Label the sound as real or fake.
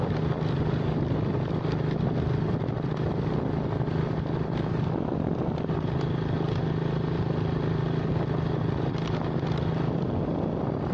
real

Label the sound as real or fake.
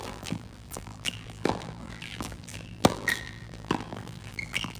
fake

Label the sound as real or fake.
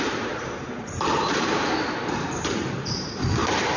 fake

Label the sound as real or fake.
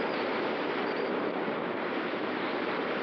fake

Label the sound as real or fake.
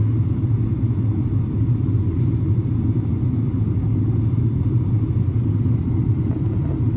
real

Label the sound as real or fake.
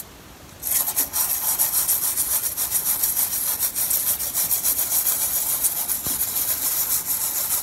real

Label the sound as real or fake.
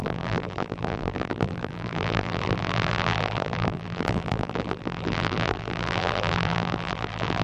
fake